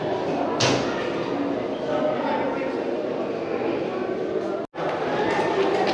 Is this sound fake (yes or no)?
no